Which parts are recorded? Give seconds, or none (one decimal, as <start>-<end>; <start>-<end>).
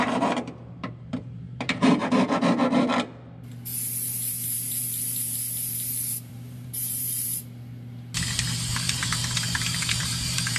2.0-6.3; 7.4-8.7